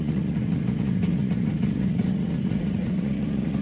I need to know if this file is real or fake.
fake